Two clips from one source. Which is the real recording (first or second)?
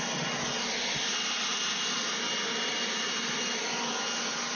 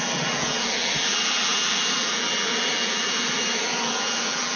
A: first